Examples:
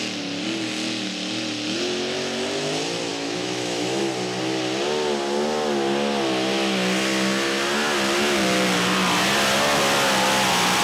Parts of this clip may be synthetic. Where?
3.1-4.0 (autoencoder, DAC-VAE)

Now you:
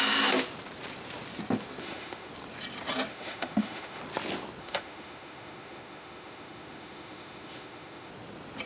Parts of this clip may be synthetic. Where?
1.8-2.3 (autoencoder, DAC-VAE); 3.1-4.0; 4.6-8.1